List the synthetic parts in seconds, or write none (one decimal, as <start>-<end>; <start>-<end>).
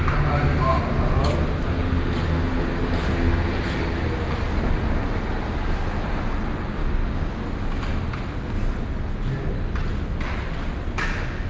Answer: 6.8-7.4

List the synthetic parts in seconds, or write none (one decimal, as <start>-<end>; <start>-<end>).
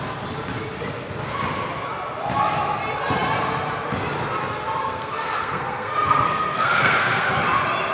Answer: 4.8-7.3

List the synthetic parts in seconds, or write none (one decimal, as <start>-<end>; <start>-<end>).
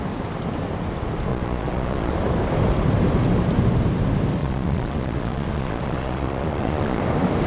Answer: 1.3-2.1; 4.4-7.0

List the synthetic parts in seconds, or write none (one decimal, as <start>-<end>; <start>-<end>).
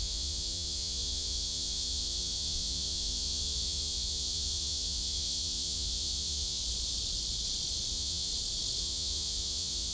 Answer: 0.0-6.6; 7.9-8.3; 8.8-9.9